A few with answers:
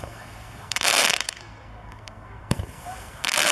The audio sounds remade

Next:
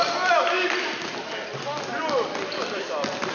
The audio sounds recorded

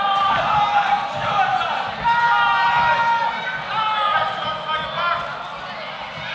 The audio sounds recorded